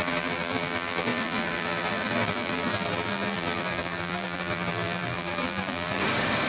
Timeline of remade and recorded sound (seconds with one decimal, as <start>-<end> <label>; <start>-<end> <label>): 0.0-6.0 remade; 6.0-6.5 recorded

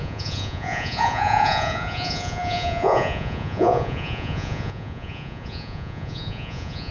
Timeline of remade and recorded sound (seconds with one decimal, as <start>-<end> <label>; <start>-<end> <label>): 0.0-6.9 remade

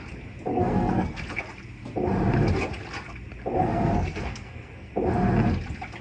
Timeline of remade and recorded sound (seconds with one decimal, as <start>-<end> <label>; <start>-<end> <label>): 0.0-0.5 recorded; 0.5-1.2 remade; 1.2-3.6 recorded; 3.6-4.9 remade; 4.9-6.0 recorded

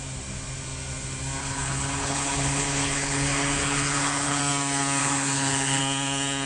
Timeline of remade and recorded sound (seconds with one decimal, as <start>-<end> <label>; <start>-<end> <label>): 0.0-1.4 recorded; 1.4-4.4 remade; 4.4-5.0 recorded; 5.0-5.8 remade; 5.8-6.5 recorded

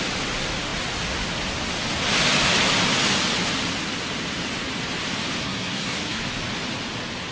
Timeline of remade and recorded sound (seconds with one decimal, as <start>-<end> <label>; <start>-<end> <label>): 0.0-5.4 recorded; 5.4-6.2 remade; 6.2-7.3 recorded

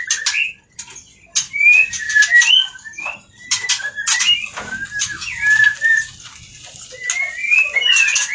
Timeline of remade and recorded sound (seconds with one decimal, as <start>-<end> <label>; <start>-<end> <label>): 0.0-8.3 recorded

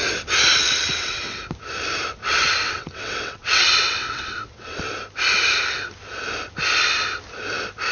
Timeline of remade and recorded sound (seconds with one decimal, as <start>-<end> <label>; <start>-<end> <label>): 0.0-0.5 recorded; 0.5-1.4 remade; 1.4-2.2 recorded; 2.2-4.8 remade; 4.8-7.9 recorded